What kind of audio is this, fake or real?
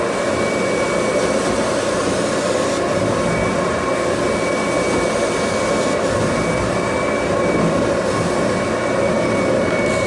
real